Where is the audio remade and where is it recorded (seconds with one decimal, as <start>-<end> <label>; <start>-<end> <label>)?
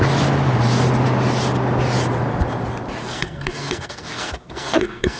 0.0-3.0 recorded; 3.0-5.2 remade